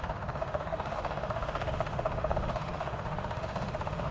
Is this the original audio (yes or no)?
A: no